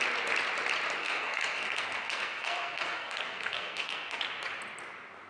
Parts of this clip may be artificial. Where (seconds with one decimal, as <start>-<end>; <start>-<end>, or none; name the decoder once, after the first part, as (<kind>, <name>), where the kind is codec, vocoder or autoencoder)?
1.0-4.2 (codec, SNAC)